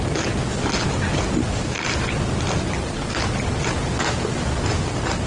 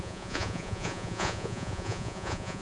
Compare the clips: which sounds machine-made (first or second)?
second